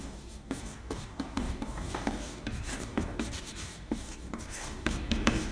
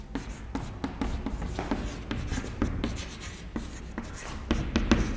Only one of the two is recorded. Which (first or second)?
second